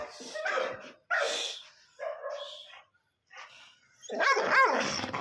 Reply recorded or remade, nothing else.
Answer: recorded